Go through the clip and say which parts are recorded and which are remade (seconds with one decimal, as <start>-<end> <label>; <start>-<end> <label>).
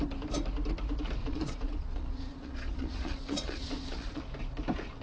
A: 0.0-1.2 recorded; 1.2-4.2 remade; 4.2-5.0 recorded